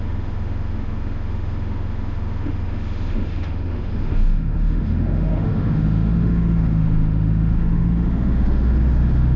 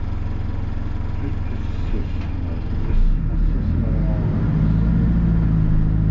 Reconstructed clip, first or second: first